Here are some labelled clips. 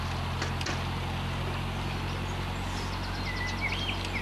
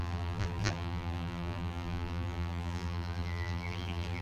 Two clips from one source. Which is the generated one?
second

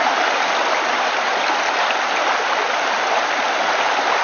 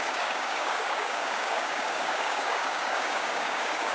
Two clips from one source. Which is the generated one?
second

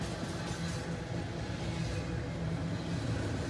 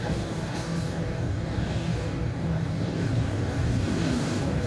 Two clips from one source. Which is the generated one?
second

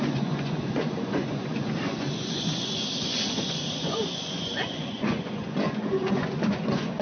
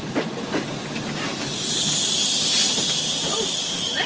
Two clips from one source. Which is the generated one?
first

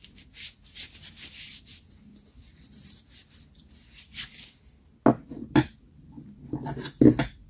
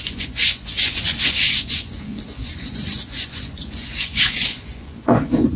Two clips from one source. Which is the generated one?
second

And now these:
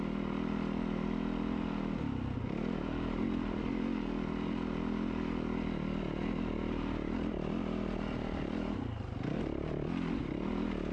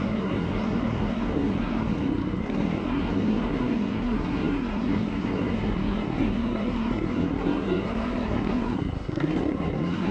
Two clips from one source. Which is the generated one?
second